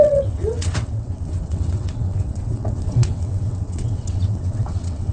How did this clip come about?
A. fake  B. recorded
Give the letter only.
A